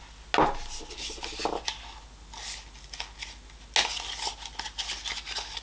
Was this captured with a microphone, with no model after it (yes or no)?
yes